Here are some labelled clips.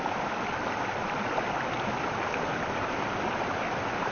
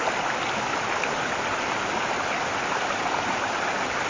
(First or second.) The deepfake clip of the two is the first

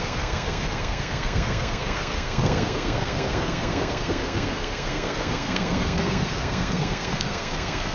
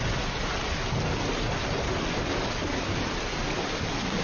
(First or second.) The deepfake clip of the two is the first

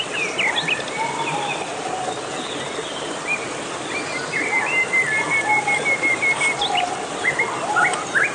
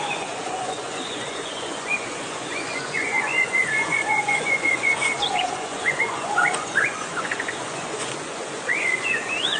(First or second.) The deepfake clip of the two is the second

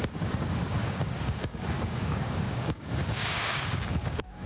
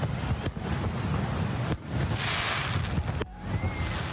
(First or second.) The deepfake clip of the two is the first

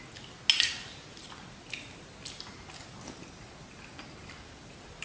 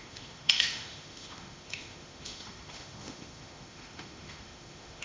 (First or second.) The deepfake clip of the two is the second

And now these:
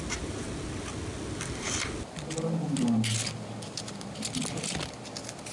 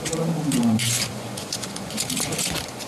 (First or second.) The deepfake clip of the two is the second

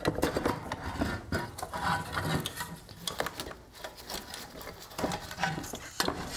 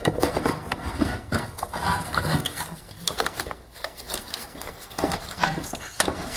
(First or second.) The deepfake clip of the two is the second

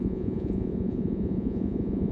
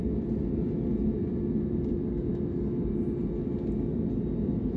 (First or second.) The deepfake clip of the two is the first